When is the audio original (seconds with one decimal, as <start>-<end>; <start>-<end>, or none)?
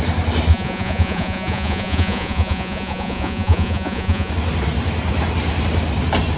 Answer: 0.0-0.5; 4.3-6.4